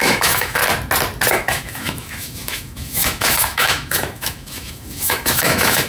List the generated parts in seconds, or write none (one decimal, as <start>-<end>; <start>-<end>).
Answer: 0.0-0.6; 1.3-5.9